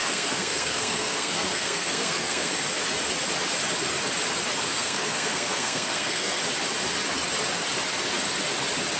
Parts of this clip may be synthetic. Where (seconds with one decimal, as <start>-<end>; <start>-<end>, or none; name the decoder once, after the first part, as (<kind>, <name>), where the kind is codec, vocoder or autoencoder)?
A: 0.0-2.5 (codec, SNAC); 4.6-6.4